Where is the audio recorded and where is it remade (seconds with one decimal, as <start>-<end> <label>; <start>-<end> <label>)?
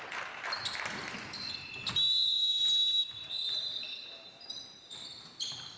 0.0-2.9 recorded; 2.9-5.3 remade; 5.3-5.8 recorded